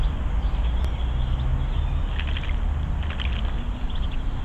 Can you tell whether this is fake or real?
real